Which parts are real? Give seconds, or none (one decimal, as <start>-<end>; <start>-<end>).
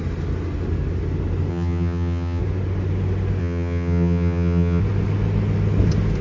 0.0-1.5; 2.4-3.4; 4.8-6.2